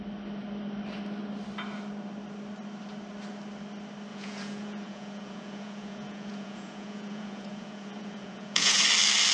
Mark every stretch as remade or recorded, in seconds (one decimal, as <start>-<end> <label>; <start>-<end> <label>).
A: 0.0-4.1 recorded; 4.1-8.8 remade; 8.8-9.3 recorded